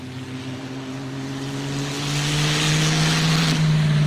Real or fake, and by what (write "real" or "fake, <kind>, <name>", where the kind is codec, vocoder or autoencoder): real